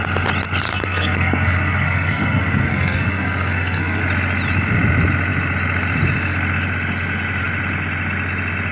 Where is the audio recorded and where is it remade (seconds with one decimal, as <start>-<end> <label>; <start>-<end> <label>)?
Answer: 0.0-0.7 recorded; 0.7-4.0 remade; 4.0-8.7 recorded